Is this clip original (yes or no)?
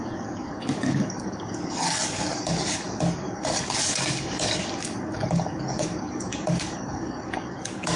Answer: no